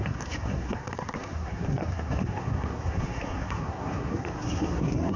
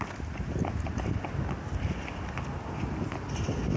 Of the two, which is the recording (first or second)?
second